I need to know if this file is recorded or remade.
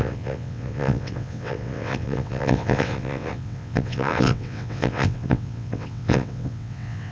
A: remade